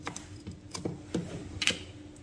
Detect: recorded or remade recorded